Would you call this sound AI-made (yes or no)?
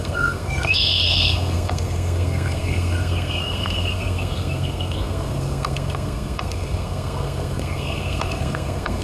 yes